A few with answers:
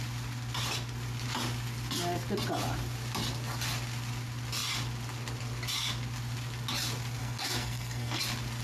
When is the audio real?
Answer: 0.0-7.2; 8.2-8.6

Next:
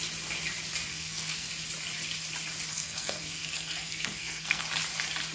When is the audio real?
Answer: 0.0-0.9; 1.5-2.7; 4.6-5.3

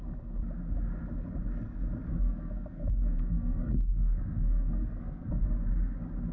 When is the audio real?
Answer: 0.0-2.1; 5.4-6.3

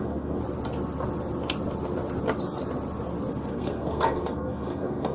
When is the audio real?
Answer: 0.4-3.5

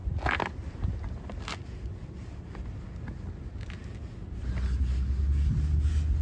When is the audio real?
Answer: 0.0-6.2

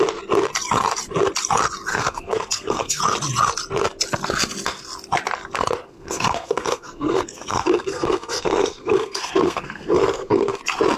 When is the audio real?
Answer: 0.0-1.9; 3.0-5.9; 10.6-11.0

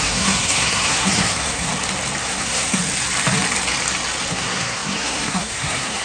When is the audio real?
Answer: 1.7-2.2; 2.8-4.3